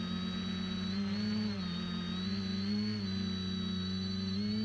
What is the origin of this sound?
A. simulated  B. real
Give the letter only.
B